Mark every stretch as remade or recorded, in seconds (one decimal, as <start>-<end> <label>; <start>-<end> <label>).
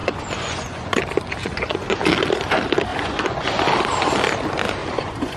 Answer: 0.0-1.0 remade; 1.0-1.4 recorded; 1.4-2.0 remade; 2.0-2.9 recorded; 2.9-3.6 remade; 3.6-4.8 recorded; 4.8-5.4 remade